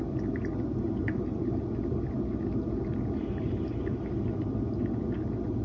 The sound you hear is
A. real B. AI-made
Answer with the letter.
A